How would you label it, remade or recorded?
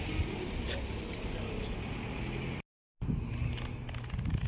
recorded